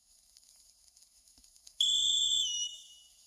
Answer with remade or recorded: remade